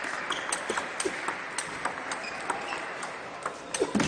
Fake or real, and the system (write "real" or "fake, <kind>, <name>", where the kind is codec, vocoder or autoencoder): real